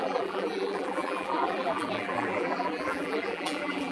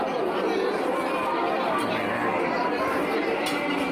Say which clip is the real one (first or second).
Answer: second